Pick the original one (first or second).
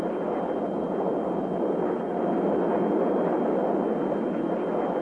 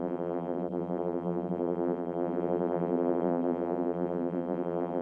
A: first